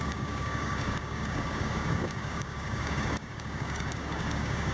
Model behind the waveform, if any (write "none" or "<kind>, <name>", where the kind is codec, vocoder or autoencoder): codec, DAC